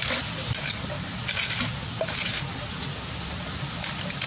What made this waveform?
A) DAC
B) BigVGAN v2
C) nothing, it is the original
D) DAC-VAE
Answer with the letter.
C